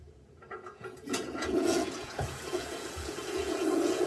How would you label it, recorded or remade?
remade